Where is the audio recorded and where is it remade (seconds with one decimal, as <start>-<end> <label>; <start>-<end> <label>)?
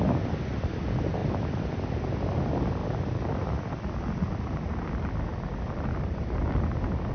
0.0-7.1 recorded